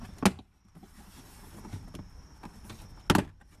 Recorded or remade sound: recorded